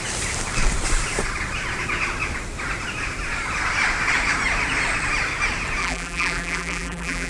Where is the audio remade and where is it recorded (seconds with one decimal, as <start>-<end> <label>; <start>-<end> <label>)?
0.0-5.8 recorded; 5.8-7.3 remade